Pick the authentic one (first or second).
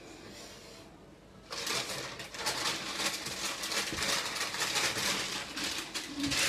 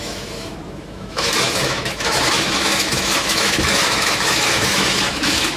first